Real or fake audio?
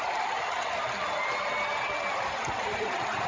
real